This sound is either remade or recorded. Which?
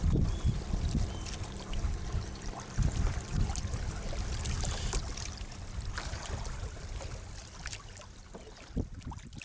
remade